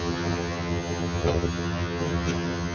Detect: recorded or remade remade